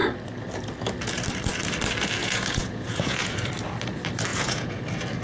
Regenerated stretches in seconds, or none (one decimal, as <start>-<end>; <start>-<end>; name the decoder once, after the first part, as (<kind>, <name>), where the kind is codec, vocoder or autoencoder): 2.2-3.3 (vocoder, Vocos); 4.3-4.8